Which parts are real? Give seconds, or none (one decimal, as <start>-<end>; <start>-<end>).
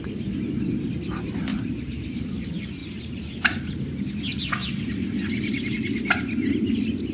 0.0-1.5; 2.2-2.8; 3.7-7.1